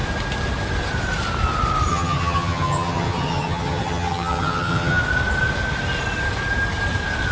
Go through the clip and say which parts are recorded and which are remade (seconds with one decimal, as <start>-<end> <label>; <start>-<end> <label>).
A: 0.0-1.9 recorded; 1.9-5.0 remade; 5.0-7.3 recorded